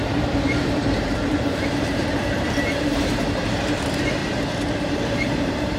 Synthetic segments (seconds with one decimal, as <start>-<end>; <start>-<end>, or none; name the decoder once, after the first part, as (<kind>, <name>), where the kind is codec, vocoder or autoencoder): 0.0-4.2 (vocoder, BigVGAN v2); 5.1-5.8